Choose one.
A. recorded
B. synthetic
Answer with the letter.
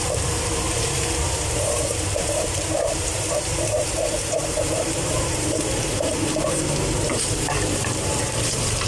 B